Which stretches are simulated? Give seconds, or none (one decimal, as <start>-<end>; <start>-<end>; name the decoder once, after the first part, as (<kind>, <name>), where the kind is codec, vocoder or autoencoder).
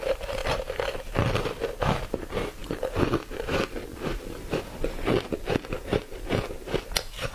none